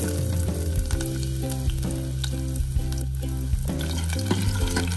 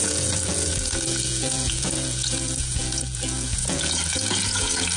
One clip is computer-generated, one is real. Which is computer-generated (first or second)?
second